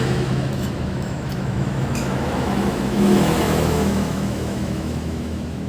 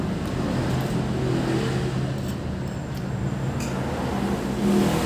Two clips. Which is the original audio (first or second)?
second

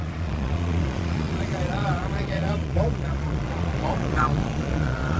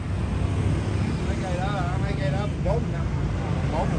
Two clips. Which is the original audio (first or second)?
second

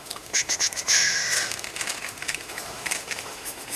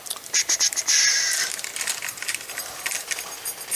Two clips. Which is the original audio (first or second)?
second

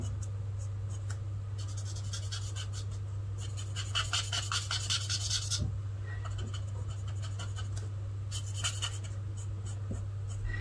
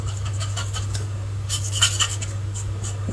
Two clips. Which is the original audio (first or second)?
first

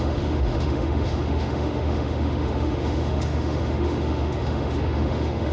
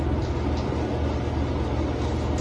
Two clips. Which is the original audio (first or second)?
second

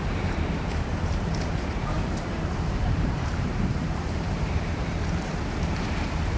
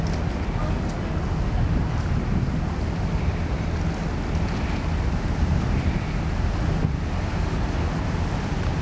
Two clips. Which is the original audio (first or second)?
second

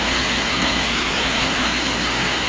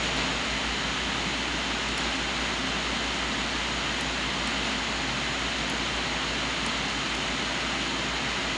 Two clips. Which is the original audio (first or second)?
second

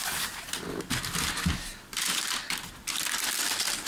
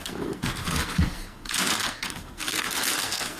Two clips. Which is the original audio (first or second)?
first